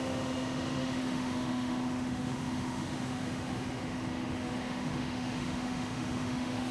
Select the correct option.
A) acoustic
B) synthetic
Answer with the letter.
B